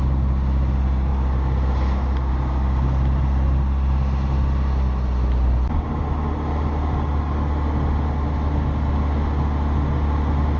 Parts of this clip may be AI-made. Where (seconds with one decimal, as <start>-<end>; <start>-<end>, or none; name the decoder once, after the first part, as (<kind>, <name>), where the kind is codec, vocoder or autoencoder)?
none